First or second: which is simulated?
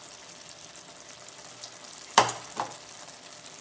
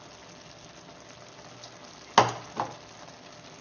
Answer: first